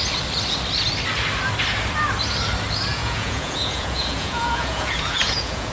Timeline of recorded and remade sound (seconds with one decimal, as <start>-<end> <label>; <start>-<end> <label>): 0.0-2.9 recorded; 2.9-5.7 remade